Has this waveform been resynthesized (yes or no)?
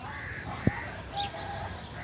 no